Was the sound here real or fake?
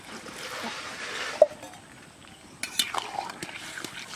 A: real